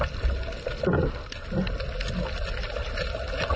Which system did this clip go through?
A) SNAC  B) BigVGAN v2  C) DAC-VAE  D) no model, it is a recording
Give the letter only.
D